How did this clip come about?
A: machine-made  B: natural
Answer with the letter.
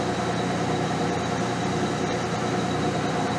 B